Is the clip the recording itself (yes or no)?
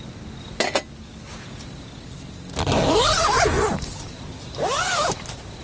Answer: yes